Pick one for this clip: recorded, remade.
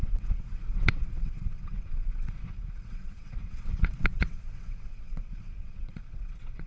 remade